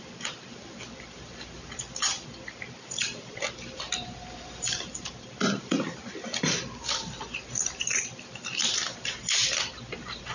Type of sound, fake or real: fake